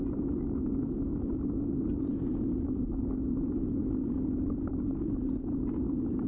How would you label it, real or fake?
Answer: real